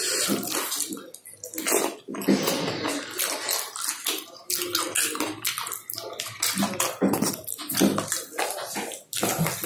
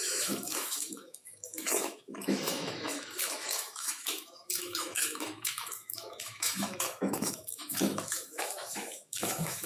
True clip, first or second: first